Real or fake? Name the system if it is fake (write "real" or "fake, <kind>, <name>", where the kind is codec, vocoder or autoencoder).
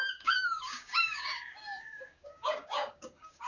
fake, codec, DAC